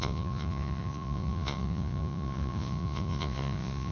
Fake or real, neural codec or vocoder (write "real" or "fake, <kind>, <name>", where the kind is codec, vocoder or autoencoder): fake, vocoder, Vocos